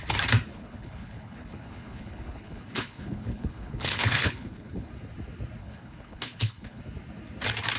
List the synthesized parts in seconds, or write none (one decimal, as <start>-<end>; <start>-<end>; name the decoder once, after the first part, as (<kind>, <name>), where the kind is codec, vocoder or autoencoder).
0.5-4.9 (codec, HILCodec); 5.6-6.8